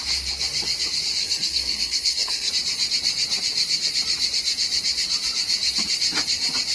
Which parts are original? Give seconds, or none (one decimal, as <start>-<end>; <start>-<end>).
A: 0.0-1.2; 2.5-6.7